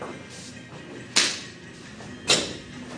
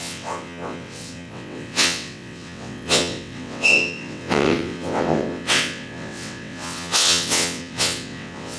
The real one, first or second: first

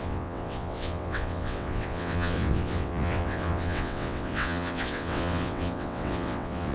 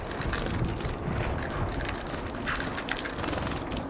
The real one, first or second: second